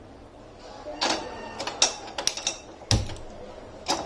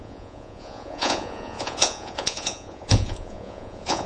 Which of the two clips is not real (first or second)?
second